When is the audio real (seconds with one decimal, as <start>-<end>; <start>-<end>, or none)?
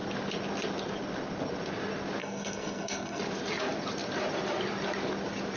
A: 0.0-2.2; 3.2-5.6